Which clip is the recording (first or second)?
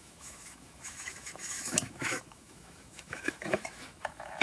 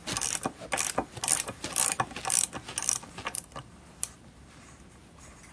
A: second